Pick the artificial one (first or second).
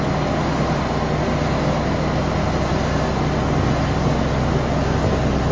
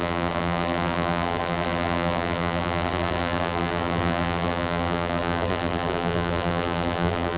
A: second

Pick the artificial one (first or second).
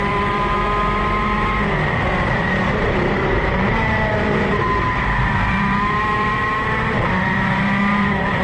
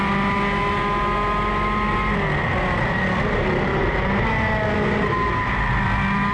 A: first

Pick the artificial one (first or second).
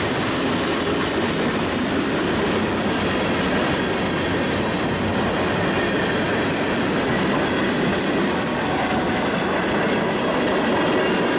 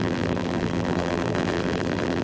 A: second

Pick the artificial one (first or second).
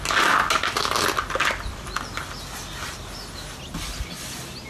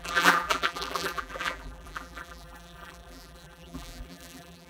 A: second